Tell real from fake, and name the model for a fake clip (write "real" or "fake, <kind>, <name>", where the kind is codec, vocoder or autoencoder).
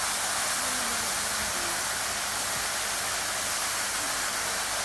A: real